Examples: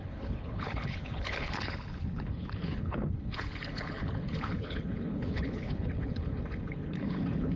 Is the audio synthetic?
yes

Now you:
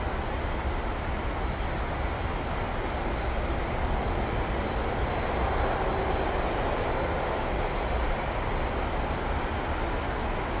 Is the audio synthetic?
no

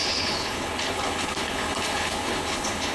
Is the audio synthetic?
yes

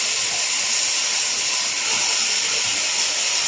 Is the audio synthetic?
no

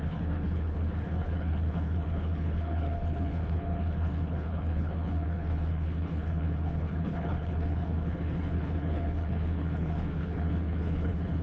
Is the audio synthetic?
yes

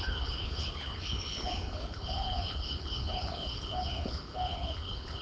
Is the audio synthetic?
yes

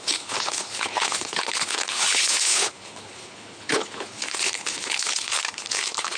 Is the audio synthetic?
yes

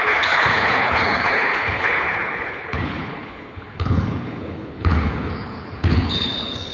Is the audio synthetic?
yes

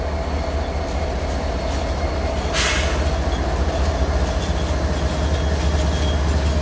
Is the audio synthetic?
no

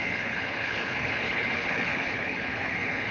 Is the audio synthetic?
yes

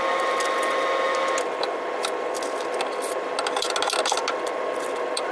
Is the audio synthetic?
no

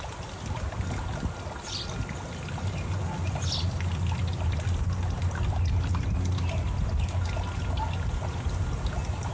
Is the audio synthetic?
no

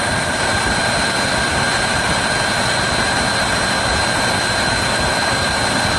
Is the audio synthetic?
no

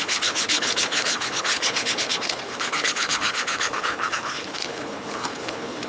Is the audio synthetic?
yes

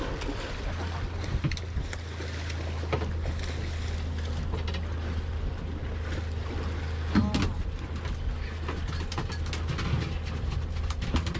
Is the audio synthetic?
no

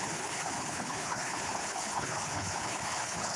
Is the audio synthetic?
yes